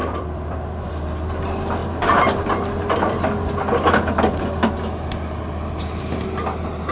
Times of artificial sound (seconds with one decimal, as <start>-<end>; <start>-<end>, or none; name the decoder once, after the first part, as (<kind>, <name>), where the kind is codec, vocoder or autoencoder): 0.0-0.9 (vocoder, BigVGAN v2)